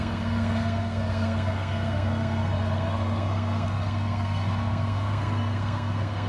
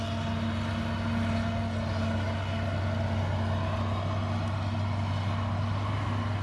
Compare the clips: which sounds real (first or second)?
second